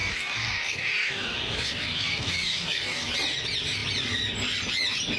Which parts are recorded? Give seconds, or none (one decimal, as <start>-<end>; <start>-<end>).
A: 3.1-5.2

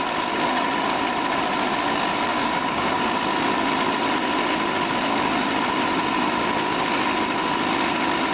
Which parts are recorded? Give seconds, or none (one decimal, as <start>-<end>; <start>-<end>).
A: 0.0-2.3; 2.9-8.3

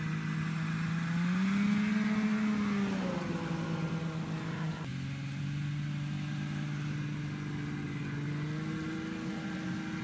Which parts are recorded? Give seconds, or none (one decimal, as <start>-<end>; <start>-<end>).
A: 0.0-10.0

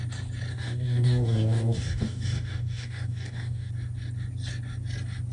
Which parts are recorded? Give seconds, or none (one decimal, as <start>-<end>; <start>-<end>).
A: 0.0-0.5; 3.7-5.3

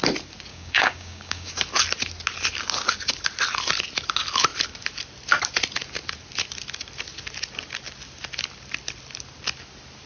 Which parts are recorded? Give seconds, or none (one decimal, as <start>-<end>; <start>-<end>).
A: 0.0-0.5; 1.5-10.1